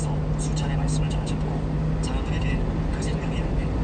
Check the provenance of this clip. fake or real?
real